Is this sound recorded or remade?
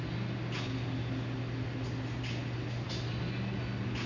recorded